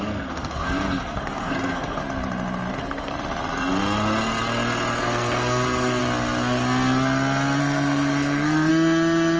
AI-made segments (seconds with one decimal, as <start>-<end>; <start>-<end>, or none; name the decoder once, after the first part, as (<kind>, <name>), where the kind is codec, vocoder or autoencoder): 0.0-2.0 (codec, SNAC); 2.7-3.1; 5.0-6.0; 7.6-8.7